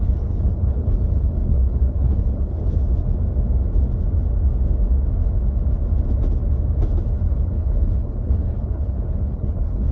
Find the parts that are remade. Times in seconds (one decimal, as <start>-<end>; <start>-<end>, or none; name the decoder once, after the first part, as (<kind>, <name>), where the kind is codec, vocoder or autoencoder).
0.0-2.6 (codec, HILCodec); 7.2-9.9